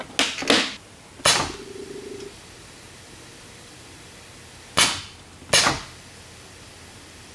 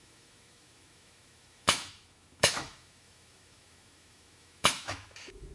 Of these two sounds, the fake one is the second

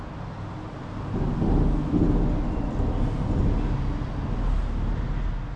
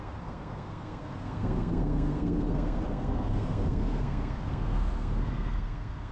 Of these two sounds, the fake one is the second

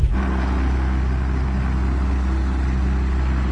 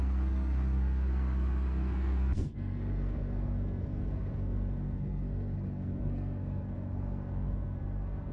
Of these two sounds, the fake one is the second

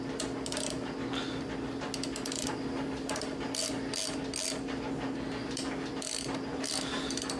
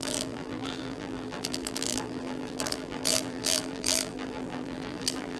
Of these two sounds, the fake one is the second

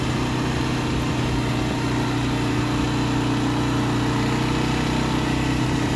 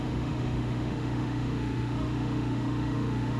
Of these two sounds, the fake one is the second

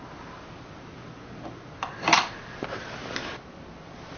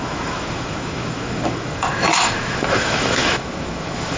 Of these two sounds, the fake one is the second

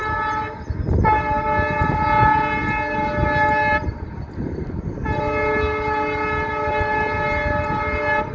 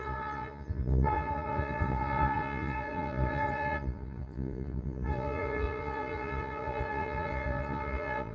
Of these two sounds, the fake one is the second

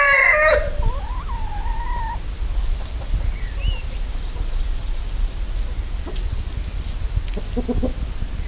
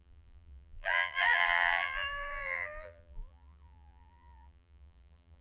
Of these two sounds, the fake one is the second